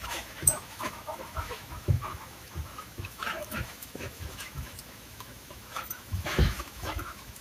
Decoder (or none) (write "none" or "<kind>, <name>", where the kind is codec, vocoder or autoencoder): autoencoder, DAC-VAE